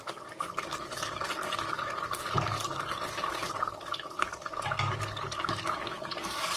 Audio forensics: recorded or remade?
remade